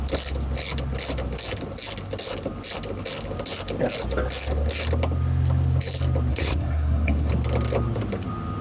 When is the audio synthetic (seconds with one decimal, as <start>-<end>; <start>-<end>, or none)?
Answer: 6.3-7.3